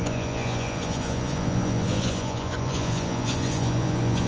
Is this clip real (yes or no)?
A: no